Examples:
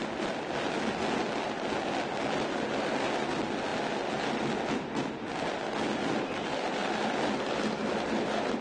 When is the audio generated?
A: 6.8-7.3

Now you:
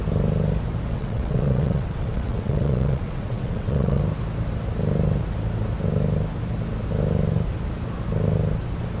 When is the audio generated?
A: 0.9-4.0

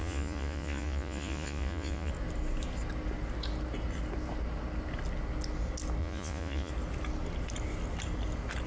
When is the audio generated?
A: 0.0-2.1; 6.0-6.7

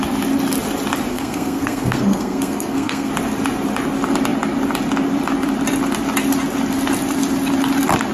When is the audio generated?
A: 1.1-3.1

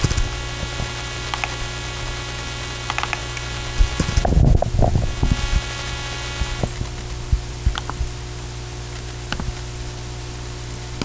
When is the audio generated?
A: none

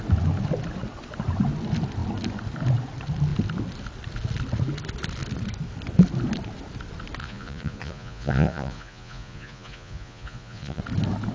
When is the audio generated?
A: 7.2-10.8

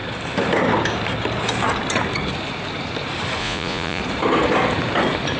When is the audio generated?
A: 3.4-4.0

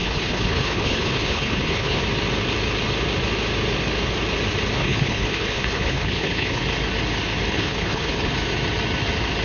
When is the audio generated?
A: 0.0-2.0; 4.8-6.6; 7.5-8.3